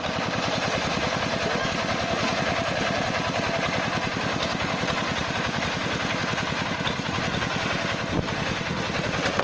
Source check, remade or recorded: recorded